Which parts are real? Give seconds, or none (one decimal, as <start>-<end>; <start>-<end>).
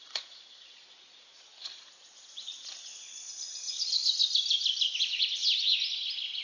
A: 4.2-5.0; 5.4-6.4